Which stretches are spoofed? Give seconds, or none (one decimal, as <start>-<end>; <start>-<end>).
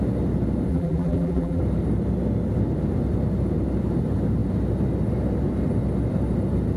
0.7-1.6